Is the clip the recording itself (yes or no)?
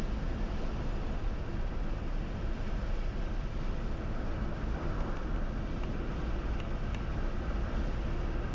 yes